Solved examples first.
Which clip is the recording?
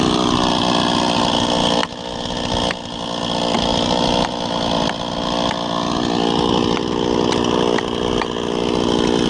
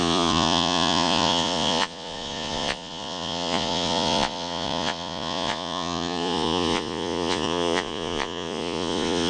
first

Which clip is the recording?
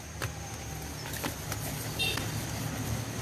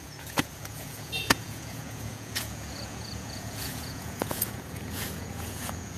first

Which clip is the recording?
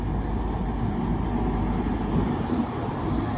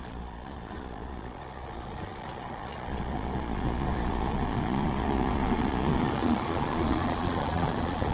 first